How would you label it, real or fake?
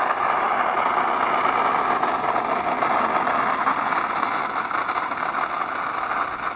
real